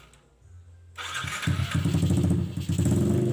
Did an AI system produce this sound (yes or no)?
no